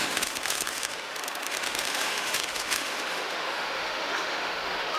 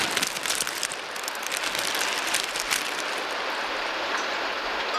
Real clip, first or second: second